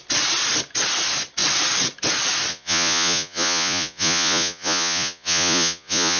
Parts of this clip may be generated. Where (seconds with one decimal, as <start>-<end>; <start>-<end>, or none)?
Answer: 2.5-6.2